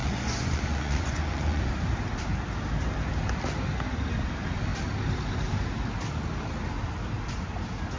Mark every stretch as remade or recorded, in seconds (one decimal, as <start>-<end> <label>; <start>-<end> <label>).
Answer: 0.0-1.6 remade; 1.6-8.0 recorded